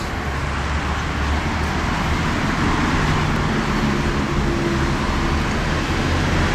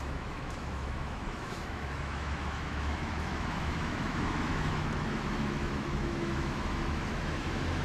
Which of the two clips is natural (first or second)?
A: first